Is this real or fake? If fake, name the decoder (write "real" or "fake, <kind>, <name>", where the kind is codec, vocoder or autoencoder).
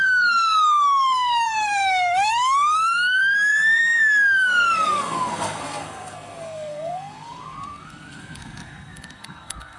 fake, codec, SNAC